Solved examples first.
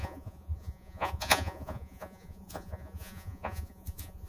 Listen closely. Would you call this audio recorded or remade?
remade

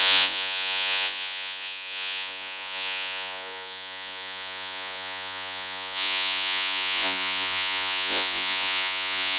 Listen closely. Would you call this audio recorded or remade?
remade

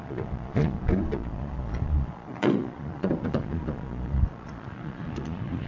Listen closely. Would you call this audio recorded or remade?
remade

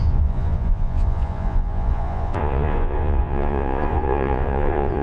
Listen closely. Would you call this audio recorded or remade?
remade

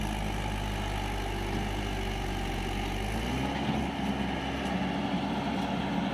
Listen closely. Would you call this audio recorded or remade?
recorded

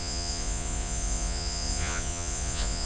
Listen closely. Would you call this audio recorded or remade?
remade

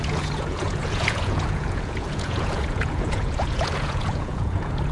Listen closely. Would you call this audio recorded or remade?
remade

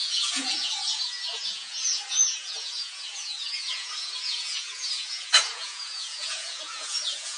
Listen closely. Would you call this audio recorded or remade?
remade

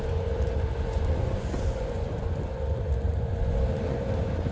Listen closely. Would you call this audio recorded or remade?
remade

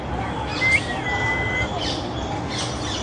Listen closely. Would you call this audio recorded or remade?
recorded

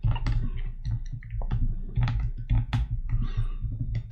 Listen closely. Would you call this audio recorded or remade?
recorded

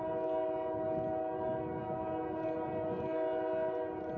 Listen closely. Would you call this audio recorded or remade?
recorded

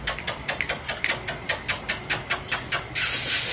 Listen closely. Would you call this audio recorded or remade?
recorded